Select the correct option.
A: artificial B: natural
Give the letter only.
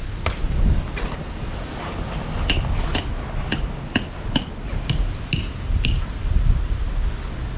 B